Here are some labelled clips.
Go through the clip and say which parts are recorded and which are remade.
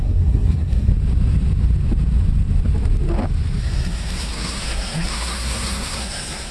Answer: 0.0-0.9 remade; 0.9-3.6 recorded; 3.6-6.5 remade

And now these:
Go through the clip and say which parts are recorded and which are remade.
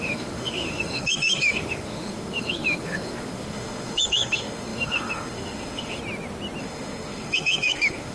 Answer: 0.0-6.0 remade; 6.0-6.6 recorded; 6.6-8.1 remade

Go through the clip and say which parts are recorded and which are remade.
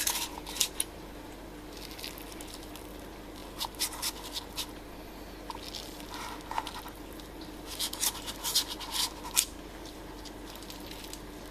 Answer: 0.0-11.5 recorded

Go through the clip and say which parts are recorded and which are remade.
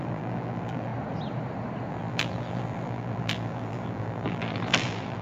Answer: 0.0-0.9 remade; 0.9-1.9 recorded; 1.9-5.2 remade